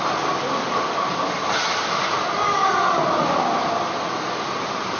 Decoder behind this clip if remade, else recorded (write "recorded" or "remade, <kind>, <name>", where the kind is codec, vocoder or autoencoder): recorded